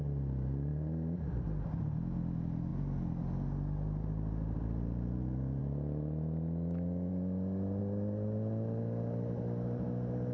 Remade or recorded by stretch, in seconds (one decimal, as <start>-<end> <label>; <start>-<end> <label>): 0.0-10.3 recorded

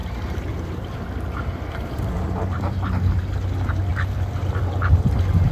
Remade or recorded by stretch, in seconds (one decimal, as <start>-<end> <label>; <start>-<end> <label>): 0.0-3.3 remade; 3.3-3.9 recorded; 3.9-4.7 remade; 4.7-5.5 recorded

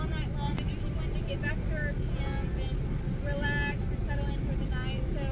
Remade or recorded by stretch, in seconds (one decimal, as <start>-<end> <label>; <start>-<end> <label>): 0.0-0.5 recorded; 0.5-1.0 remade; 1.0-5.3 recorded

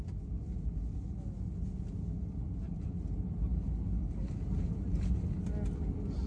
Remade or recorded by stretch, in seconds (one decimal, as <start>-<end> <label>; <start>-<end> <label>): 0.0-6.3 recorded

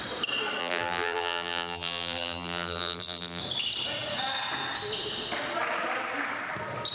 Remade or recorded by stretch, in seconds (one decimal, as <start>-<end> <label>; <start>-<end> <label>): 0.0-0.6 recorded; 0.6-3.4 remade; 3.4-6.9 recorded

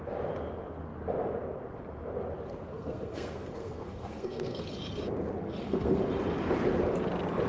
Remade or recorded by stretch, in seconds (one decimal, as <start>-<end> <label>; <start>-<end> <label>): 0.0-2.7 recorded; 2.7-4.7 remade; 4.7-5.4 recorded; 5.4-6.0 remade; 6.0-7.5 recorded